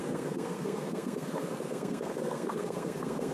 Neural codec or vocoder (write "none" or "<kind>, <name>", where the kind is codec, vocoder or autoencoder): codec, SNAC